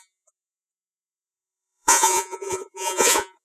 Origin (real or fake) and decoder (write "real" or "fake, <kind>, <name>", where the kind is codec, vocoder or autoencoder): fake, vocoder, Vocos